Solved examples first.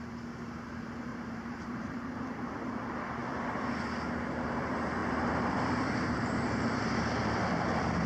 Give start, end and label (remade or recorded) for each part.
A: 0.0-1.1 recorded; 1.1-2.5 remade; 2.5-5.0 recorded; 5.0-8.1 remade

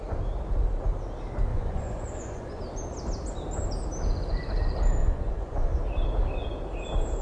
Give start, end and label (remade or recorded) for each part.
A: 0.0-1.5 recorded; 1.5-2.6 remade; 2.6-5.0 recorded; 5.0-5.8 remade; 5.8-7.2 recorded

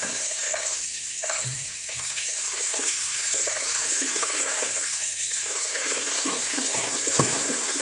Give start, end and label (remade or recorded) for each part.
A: 0.0-7.8 remade